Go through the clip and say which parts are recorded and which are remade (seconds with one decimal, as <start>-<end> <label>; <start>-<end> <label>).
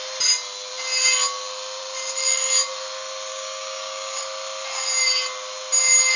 0.0-3.3 recorded; 3.3-4.2 remade; 4.2-6.2 recorded